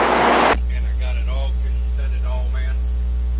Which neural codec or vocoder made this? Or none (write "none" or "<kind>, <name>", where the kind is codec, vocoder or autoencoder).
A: none